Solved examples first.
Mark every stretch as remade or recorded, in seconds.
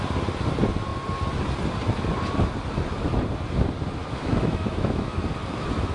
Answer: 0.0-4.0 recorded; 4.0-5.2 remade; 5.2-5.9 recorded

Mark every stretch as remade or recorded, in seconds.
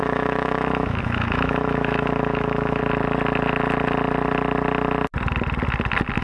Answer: 0.0-2.8 remade; 2.8-6.2 recorded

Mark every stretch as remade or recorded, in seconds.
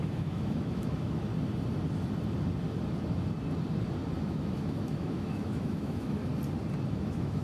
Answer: 0.0-1.3 remade; 1.3-4.2 recorded; 4.2-6.3 remade; 6.3-6.9 recorded; 6.9-7.4 remade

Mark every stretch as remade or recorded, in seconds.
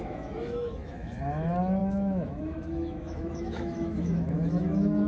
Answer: 0.0-5.1 remade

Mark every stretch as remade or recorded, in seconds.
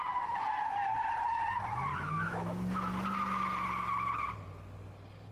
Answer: 0.0-1.9 recorded; 1.9-2.9 remade; 2.9-5.3 recorded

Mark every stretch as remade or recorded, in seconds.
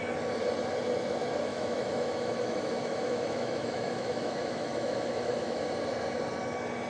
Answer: 0.0-1.5 recorded; 1.5-5.6 remade; 5.6-6.9 recorded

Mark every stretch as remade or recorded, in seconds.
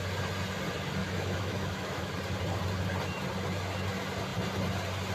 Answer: 0.0-1.0 recorded; 1.0-2.1 remade; 2.1-5.1 recorded